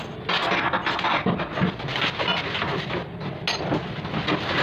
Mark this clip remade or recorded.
recorded